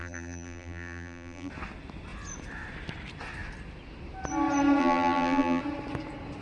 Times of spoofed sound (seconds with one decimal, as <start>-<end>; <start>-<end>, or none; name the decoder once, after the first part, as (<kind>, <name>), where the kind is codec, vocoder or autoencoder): 0.0-1.5 (vocoder, BigVGAN v2); 4.8-5.6